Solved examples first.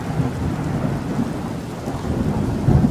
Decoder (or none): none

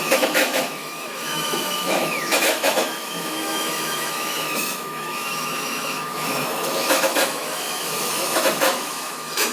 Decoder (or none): autoencoder, DAC-VAE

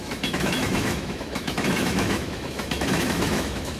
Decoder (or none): autoencoder, DAC-VAE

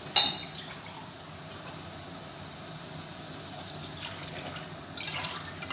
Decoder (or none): none